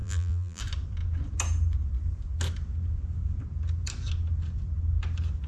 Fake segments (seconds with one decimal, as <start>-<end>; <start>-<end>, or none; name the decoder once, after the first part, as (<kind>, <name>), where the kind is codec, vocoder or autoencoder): 0.0-0.6 (vocoder, BigVGAN v2)